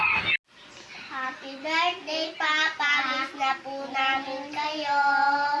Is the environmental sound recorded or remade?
recorded